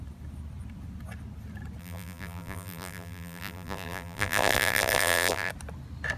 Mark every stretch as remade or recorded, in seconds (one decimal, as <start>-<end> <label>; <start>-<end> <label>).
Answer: 0.0-1.8 recorded; 1.8-5.5 remade; 5.5-6.2 recorded